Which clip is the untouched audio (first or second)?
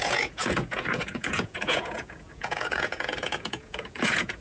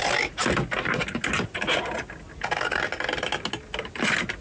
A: second